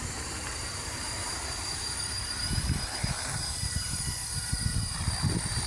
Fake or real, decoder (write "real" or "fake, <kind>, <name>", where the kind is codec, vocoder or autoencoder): fake, vocoder, BigVGAN v2